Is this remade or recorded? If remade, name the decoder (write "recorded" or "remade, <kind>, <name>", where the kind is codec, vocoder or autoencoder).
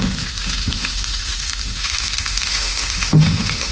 remade, autoencoder, DAC-VAE